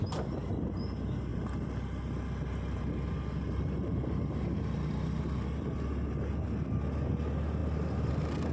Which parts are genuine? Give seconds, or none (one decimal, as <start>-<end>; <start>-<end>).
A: 0.0-8.5